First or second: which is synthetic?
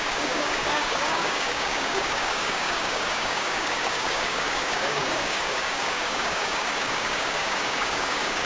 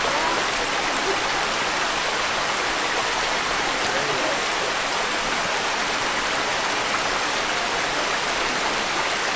first